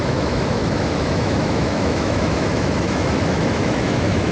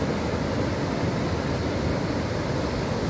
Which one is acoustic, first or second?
second